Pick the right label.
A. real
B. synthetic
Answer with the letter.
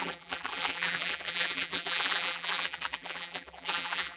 B